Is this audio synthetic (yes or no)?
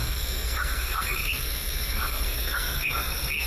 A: yes